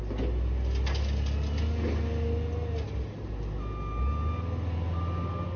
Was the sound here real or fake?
real